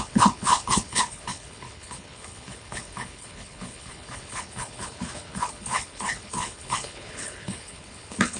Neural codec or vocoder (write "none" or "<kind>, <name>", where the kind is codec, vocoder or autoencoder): codec, HILCodec